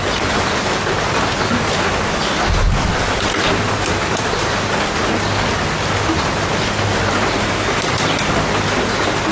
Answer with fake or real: real